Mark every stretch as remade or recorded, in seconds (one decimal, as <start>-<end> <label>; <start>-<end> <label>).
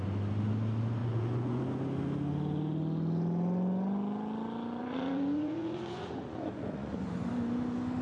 0.0-1.0 recorded; 1.0-1.6 remade; 1.6-4.8 recorded; 4.8-7.3 remade; 7.3-8.0 recorded